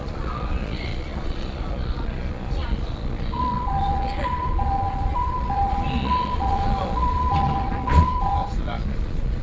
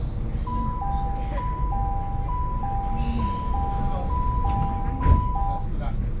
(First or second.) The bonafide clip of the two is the second